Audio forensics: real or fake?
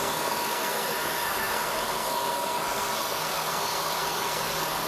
fake